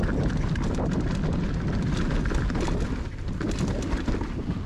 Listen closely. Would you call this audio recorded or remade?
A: recorded